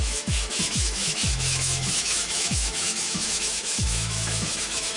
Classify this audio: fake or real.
fake